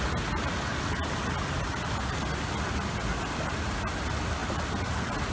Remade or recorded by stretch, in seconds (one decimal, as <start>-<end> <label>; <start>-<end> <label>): 0.0-5.3 recorded